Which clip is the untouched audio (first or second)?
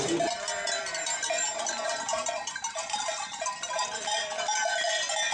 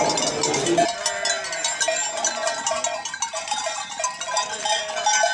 second